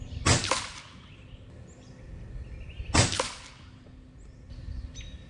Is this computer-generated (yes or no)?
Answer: no